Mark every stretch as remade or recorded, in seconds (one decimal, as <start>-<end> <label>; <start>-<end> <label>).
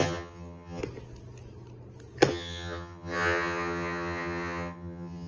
0.0-0.8 remade; 0.8-2.3 recorded; 2.3-5.3 remade